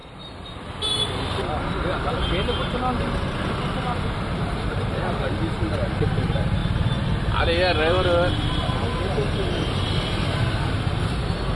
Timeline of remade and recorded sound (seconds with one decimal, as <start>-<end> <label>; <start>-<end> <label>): 0.0-11.5 recorded